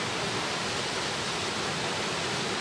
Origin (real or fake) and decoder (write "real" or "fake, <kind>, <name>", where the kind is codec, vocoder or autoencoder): real